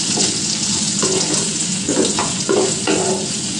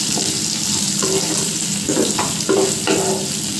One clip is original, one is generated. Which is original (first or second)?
second